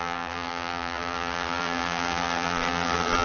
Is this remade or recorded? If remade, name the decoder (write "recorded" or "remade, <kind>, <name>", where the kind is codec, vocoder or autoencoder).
remade, vocoder, BigVGAN v2